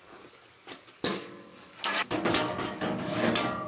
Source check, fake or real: fake